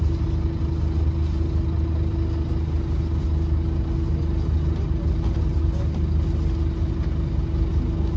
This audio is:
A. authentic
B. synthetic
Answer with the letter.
A